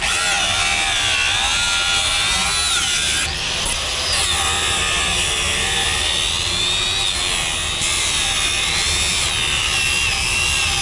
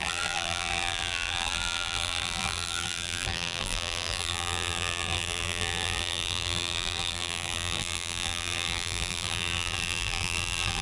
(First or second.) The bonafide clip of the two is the first